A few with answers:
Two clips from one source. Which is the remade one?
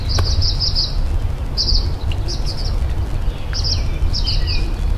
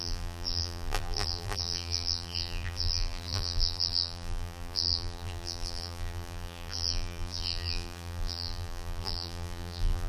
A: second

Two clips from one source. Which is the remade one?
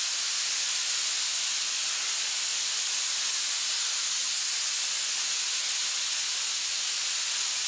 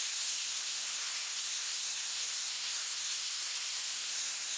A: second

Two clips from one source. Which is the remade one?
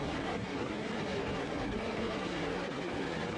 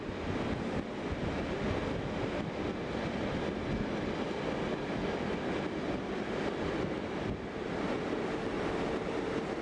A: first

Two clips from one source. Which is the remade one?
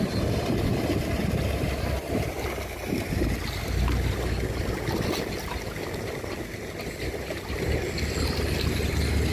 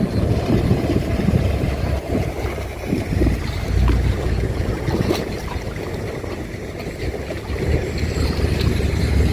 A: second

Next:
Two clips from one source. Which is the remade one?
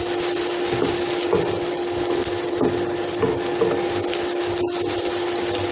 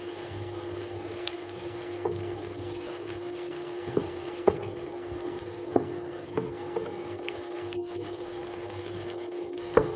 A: second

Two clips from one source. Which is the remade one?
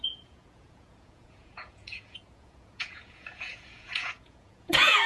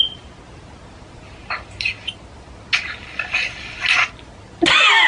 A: first